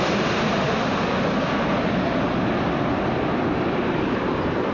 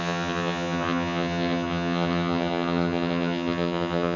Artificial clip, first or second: second